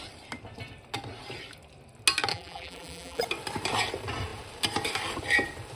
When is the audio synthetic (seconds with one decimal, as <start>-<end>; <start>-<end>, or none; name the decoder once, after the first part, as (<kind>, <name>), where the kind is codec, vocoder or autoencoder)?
2.3-3.2 (vocoder, BigVGAN v2)